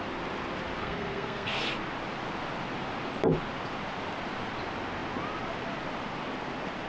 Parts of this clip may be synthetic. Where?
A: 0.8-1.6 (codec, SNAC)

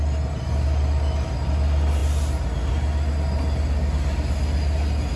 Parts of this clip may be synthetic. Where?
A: none

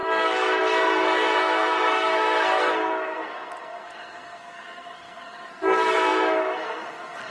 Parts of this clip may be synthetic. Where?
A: 0.0-7.3 (codec, SNAC)